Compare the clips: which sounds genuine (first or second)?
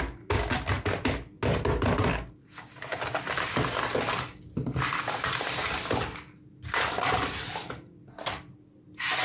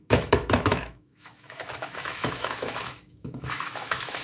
first